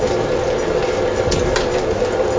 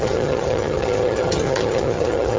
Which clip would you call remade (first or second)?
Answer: second